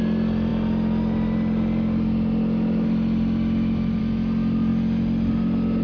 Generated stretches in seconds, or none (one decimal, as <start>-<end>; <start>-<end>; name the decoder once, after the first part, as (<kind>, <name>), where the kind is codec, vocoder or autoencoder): none